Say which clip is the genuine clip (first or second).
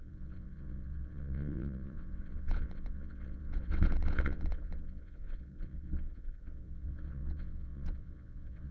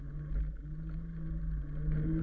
second